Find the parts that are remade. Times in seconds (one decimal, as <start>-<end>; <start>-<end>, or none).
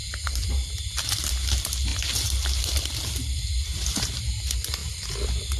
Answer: 1.9-3.4